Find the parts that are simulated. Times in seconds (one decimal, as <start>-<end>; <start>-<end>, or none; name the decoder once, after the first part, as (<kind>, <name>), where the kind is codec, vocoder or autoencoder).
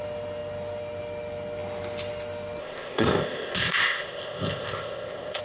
2.6-5.4 (codec, ZipCodec)